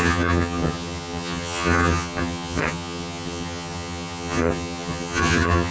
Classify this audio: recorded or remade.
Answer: remade